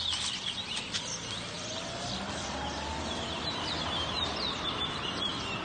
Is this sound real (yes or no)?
yes